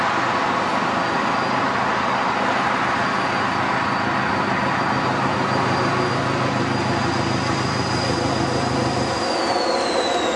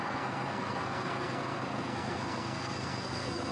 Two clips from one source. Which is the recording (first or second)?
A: first